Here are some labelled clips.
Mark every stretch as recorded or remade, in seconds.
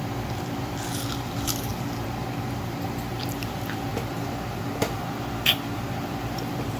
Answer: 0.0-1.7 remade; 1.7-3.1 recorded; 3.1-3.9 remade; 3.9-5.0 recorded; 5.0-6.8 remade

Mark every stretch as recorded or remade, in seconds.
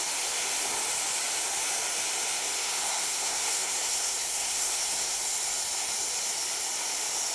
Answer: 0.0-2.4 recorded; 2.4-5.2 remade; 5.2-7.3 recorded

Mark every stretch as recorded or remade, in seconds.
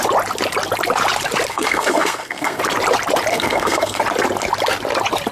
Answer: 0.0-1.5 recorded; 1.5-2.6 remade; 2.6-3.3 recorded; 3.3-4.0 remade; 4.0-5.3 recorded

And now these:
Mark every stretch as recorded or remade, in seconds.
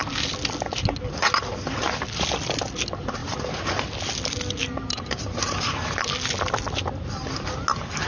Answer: 0.0-8.1 recorded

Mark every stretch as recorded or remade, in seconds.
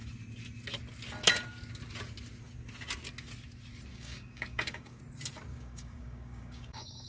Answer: 0.0-3.9 recorded; 3.9-5.0 remade; 5.0-5.5 recorded; 5.5-7.1 remade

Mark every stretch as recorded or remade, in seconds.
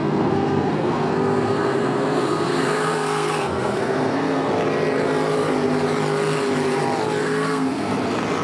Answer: 0.0-4.5 remade; 4.5-7.2 recorded; 7.2-7.9 remade; 7.9-8.4 recorded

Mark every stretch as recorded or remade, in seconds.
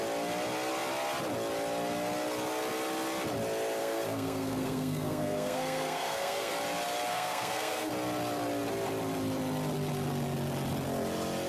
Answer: 0.0-3.8 recorded; 3.8-6.5 remade; 6.5-7.1 recorded; 7.1-7.9 remade; 7.9-11.5 recorded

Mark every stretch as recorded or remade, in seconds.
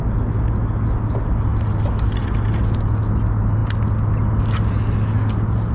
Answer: 0.0-5.7 recorded